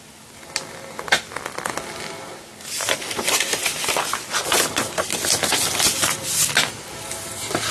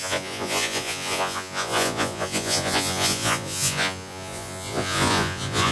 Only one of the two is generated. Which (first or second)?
second